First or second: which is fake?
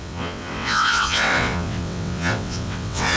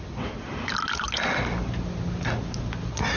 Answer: first